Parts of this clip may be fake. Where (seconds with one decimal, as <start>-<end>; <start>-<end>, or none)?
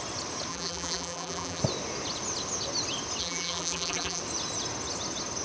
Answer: 0.5-1.6; 3.2-4.2